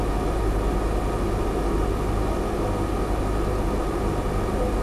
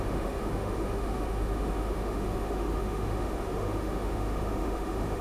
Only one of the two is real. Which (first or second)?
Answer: first